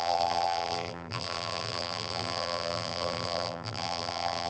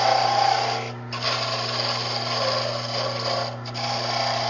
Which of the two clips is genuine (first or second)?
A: second